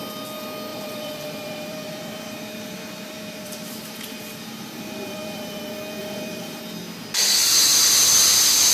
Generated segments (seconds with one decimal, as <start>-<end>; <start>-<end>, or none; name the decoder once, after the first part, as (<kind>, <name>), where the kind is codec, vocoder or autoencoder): 0.7-5.6 (vocoder, BigVGAN v2); 6.0-6.6